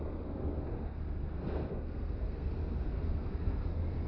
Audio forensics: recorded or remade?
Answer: remade